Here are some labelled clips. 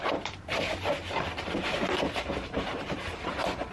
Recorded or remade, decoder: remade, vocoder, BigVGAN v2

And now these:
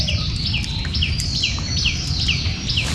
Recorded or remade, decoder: recorded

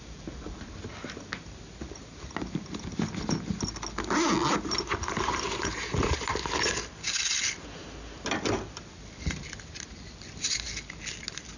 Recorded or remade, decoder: recorded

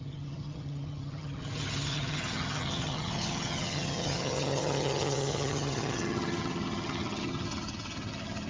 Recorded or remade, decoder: remade, vocoder, HiFi-GAN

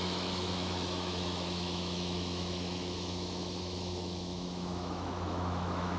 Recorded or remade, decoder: remade, autoencoder, DAC-VAE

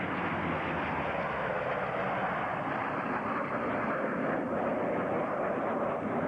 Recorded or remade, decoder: recorded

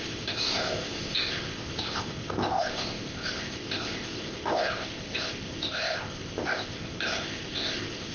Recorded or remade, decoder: remade, codec, ZipCodec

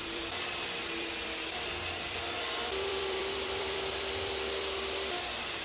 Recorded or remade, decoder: remade, vocoder, BigVGAN v2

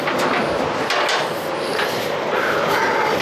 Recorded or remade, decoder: recorded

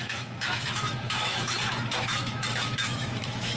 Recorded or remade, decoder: remade, autoencoder, DAC-VAE